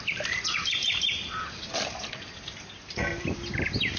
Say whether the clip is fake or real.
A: fake